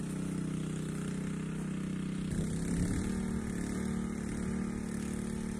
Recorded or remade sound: recorded